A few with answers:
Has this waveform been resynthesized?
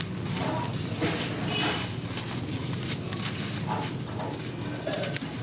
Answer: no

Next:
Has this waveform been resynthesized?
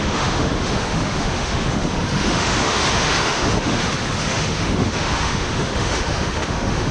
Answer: yes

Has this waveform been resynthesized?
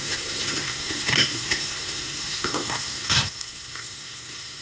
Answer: yes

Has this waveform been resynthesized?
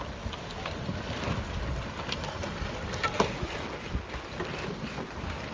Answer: no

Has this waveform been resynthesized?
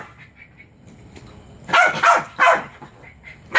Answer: no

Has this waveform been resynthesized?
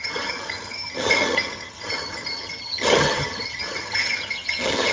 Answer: yes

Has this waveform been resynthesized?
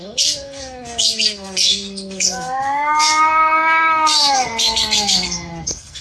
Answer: yes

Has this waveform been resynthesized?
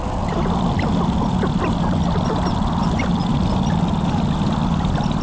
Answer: no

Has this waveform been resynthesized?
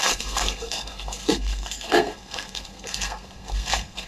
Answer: yes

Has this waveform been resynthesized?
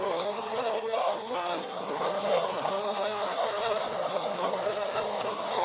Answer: yes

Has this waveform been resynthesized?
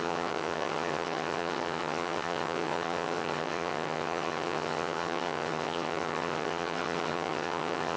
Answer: yes